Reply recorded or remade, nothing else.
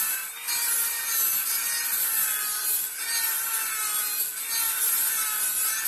recorded